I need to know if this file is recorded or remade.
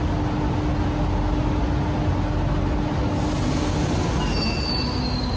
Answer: recorded